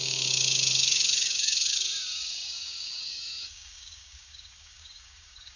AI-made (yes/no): yes